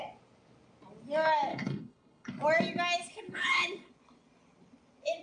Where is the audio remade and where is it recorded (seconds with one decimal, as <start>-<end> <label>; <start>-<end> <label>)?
0.0-1.5 recorded; 1.5-2.3 remade; 2.3-3.1 recorded; 3.1-3.9 remade; 3.9-5.2 recorded